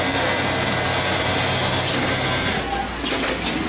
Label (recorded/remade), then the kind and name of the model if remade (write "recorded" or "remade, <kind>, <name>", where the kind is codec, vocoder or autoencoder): recorded